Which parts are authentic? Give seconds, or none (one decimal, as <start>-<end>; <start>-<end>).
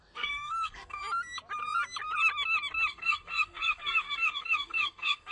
1.0-2.9